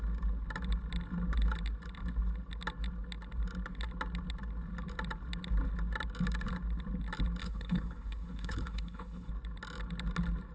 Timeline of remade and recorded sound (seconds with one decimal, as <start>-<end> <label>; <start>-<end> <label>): 0.0-7.4 recorded; 7.4-9.3 remade; 9.3-10.5 recorded